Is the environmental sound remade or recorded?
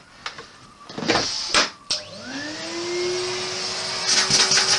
recorded